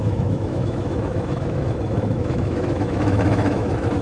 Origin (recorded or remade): remade